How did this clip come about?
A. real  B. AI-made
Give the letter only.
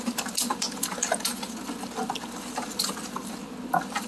A